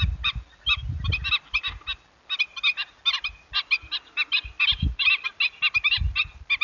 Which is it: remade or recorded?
recorded